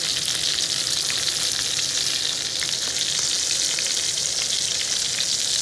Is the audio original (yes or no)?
yes